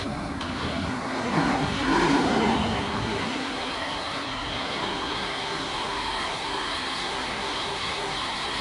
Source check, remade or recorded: remade